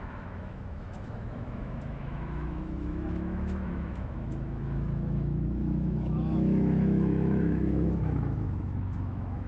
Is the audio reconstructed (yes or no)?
yes